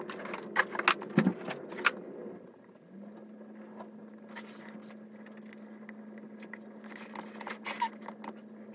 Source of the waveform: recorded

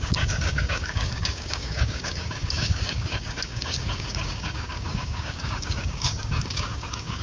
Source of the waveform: remade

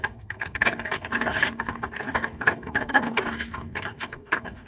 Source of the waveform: remade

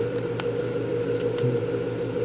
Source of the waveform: remade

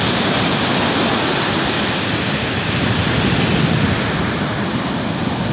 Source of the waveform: recorded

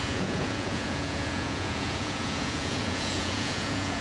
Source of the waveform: remade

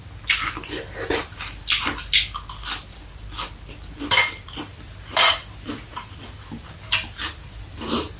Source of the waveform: recorded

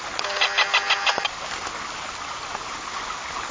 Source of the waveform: recorded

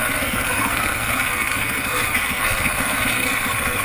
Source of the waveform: remade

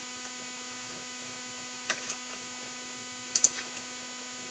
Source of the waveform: remade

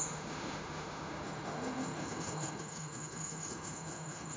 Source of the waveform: remade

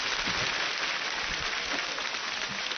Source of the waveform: recorded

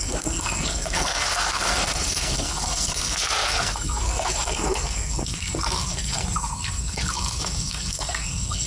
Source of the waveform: remade